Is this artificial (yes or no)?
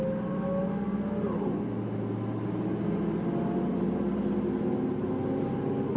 no